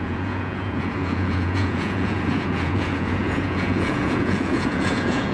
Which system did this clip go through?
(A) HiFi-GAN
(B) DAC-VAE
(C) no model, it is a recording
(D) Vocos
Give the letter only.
D